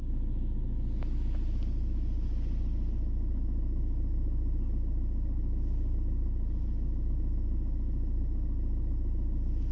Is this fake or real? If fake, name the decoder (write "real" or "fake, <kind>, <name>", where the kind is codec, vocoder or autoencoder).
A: real